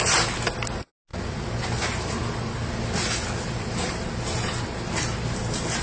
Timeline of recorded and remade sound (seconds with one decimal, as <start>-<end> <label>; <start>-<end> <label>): 0.0-5.8 recorded